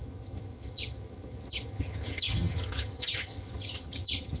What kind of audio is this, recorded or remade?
remade